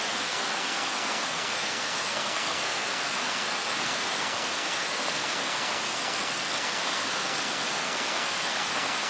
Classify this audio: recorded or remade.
remade